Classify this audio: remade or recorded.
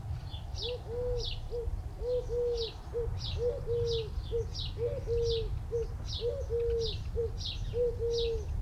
recorded